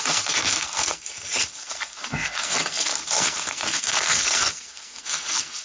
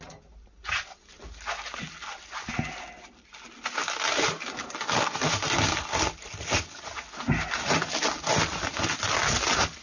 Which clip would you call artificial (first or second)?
first